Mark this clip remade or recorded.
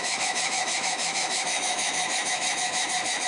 remade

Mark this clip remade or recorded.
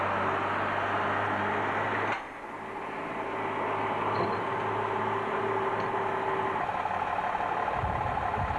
recorded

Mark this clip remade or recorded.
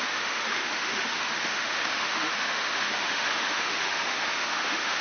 remade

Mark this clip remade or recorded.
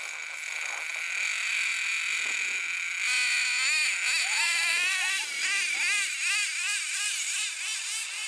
recorded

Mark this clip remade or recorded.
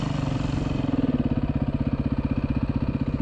recorded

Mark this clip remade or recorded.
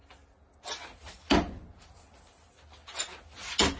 recorded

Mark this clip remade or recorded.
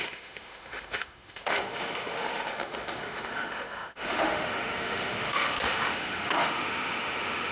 remade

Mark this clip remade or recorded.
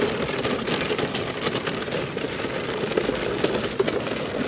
recorded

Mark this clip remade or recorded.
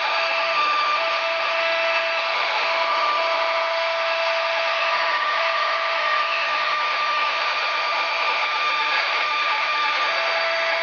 remade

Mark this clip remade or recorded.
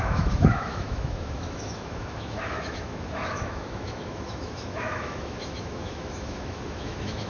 remade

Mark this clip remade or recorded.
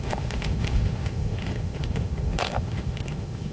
remade